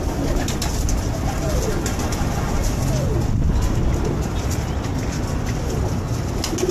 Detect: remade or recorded recorded